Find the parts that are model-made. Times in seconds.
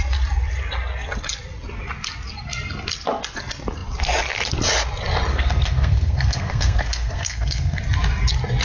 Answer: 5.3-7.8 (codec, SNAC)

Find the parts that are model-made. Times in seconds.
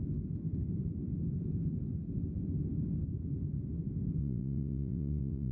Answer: 4.2-5.5 (vocoder, Vocos)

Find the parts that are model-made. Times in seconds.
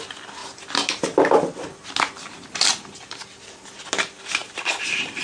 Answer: none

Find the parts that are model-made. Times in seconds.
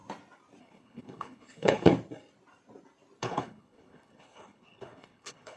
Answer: 0.6-1.9 (codec, HILCodec); 3.2-5.6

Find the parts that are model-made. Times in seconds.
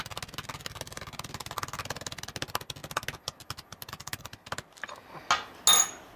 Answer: none